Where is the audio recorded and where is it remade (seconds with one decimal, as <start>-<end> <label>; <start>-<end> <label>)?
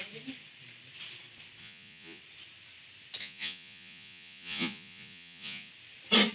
0.0-1.6 recorded; 1.6-2.2 remade; 2.2-3.2 recorded; 3.2-5.7 remade; 5.7-6.3 recorded